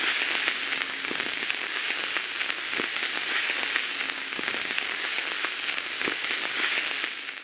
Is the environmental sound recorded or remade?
remade